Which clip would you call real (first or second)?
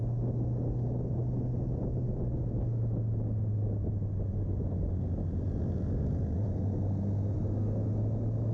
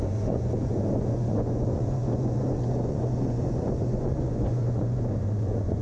first